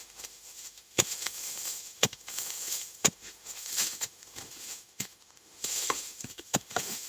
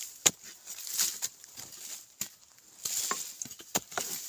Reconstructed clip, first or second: first